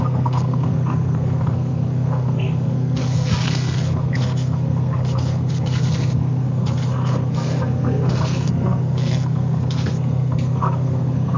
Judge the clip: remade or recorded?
remade